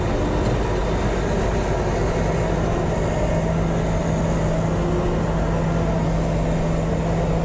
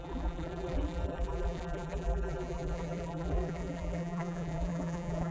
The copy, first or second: second